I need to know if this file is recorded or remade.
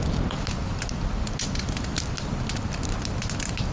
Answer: recorded